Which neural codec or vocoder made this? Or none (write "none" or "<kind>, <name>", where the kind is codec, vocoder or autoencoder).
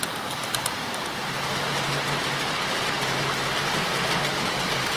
vocoder, BigVGAN v2